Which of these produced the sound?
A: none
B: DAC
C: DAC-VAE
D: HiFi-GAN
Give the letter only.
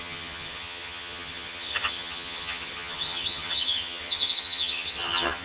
D